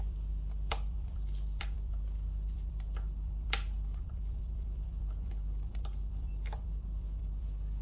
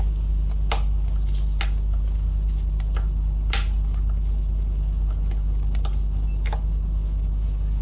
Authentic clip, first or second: second